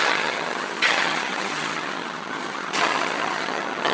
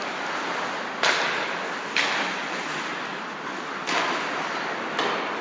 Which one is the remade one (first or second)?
first